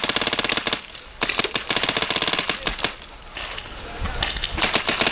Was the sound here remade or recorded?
recorded